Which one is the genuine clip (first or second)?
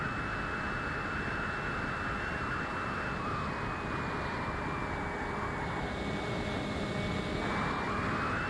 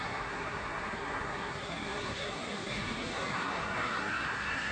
first